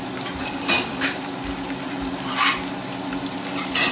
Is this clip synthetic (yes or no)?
no